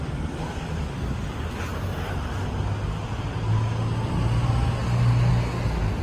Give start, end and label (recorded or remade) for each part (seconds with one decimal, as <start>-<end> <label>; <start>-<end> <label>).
0.0-6.0 recorded